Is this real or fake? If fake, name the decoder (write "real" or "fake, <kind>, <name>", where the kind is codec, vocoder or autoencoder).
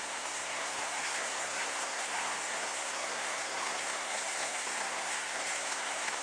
fake, codec, SNAC